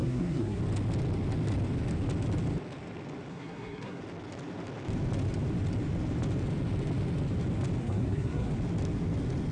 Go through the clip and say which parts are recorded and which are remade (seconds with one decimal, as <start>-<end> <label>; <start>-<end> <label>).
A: 0.0-0.6 remade; 0.6-3.3 recorded; 3.3-4.0 remade; 4.0-7.8 recorded; 7.8-8.5 remade; 8.5-9.5 recorded